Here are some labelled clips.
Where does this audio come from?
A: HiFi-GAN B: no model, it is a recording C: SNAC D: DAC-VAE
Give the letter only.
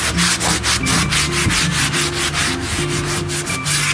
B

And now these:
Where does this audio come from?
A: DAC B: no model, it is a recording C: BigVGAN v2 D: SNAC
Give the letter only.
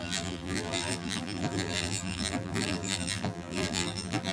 C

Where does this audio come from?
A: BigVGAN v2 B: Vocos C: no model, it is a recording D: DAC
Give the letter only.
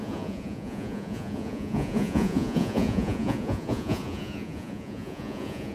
B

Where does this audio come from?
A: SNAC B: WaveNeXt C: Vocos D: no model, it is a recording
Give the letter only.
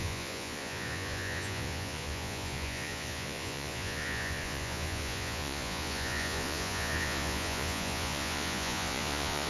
C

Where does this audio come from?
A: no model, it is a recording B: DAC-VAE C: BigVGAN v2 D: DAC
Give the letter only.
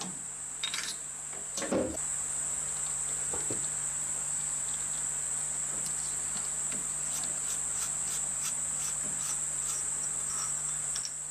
A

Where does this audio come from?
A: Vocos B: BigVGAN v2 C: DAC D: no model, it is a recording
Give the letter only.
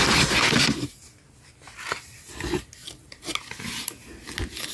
D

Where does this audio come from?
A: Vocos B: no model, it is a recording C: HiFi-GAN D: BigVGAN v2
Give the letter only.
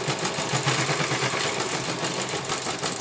B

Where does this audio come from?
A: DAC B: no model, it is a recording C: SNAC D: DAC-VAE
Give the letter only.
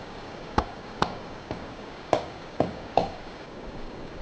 A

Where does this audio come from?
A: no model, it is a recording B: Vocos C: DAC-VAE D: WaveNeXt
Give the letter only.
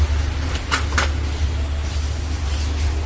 A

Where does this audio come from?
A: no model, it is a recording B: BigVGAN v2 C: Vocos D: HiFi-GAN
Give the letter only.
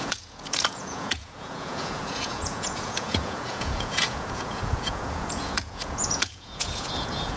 C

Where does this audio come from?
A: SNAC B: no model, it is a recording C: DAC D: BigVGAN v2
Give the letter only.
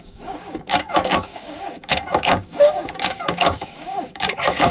C